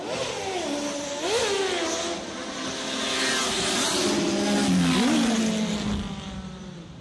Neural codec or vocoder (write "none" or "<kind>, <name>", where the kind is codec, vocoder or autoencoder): none